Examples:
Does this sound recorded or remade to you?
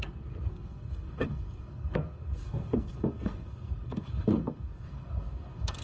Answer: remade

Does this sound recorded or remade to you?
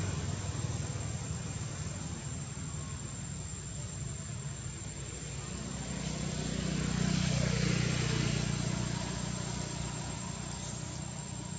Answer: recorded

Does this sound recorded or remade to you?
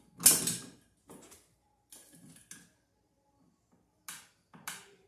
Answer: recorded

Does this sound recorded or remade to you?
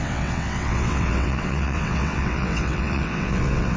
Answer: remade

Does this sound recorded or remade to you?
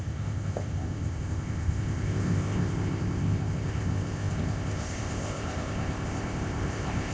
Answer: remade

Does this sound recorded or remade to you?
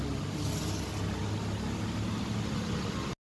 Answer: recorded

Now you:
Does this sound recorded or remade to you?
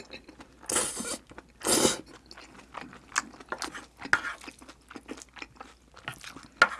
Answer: recorded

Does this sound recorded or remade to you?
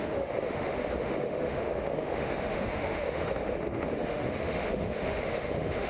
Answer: remade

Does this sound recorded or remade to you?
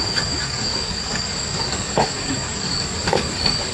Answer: remade